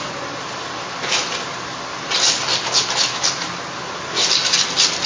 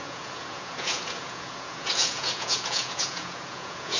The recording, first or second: first